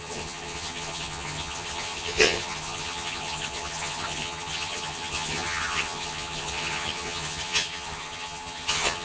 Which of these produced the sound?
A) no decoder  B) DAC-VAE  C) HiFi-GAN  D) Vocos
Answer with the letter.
C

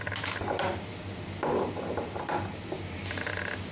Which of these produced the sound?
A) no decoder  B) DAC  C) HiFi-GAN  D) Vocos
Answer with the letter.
A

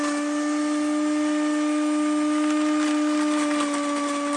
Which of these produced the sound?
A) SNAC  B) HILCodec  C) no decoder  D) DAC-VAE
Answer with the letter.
C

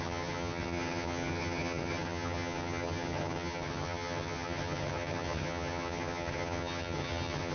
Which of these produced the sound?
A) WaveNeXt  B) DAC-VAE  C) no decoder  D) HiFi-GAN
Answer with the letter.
D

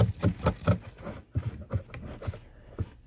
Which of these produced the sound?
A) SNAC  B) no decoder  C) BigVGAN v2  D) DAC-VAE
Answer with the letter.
B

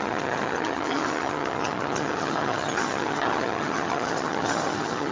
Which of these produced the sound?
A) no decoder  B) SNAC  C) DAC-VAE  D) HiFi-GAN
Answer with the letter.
D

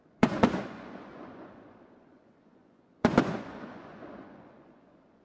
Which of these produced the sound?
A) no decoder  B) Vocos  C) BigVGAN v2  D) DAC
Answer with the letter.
B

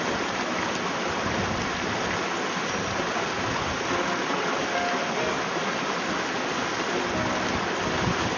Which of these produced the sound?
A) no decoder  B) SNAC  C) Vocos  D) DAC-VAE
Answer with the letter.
A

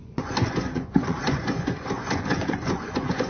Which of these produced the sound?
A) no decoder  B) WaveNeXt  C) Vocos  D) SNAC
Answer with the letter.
C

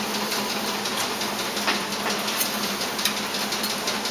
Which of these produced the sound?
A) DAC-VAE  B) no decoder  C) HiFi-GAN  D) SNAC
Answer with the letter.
B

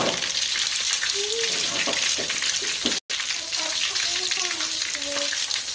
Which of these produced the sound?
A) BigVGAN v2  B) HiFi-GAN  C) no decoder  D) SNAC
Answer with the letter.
C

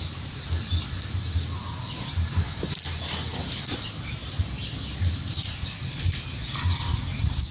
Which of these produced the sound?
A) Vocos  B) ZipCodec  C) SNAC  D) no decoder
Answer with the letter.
D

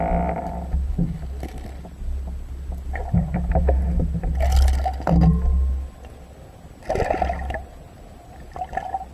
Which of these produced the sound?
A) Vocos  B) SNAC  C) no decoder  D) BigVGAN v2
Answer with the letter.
C